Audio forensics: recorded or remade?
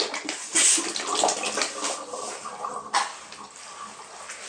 recorded